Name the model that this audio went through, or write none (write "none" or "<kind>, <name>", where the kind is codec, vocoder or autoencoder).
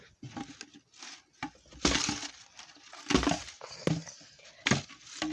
none